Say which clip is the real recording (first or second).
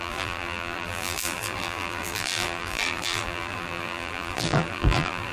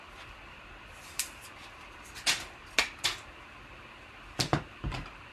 second